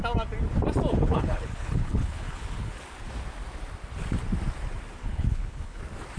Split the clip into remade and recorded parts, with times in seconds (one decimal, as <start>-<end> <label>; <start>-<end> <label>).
0.0-0.9 recorded; 0.9-2.7 remade; 2.7-5.0 recorded; 5.0-5.8 remade; 5.8-6.2 recorded